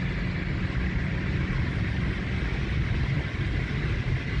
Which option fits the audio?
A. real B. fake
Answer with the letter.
A